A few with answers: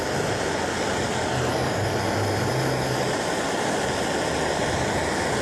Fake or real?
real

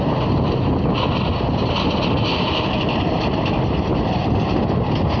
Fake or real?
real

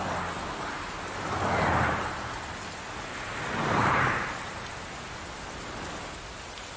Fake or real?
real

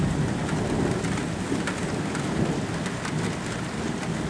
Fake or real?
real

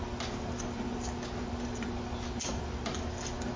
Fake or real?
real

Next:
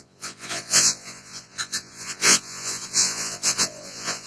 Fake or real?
fake